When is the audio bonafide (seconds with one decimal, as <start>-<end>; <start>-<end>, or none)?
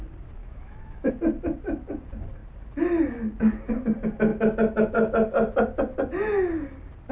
0.0-0.4; 1.1-7.1